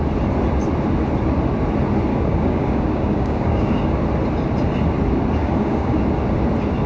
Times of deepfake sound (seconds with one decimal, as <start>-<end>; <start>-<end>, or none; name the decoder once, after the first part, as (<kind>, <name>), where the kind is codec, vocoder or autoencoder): 2.1-4.0 (codec, DAC); 5.4-6.0